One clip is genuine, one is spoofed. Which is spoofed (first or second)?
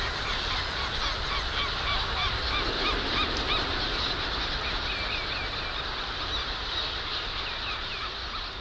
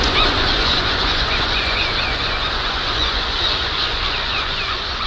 second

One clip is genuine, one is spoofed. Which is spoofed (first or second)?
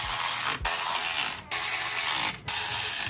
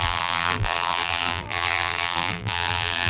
second